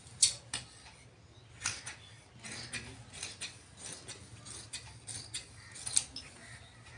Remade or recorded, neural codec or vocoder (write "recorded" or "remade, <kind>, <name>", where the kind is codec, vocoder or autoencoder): recorded